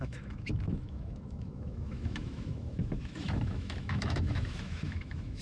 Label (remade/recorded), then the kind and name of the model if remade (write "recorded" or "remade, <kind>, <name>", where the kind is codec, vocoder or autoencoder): remade, autoencoder, DAC-VAE